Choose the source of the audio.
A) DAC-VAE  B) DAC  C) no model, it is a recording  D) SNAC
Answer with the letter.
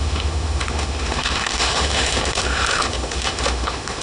A